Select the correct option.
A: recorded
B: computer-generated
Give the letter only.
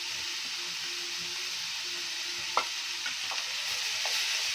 A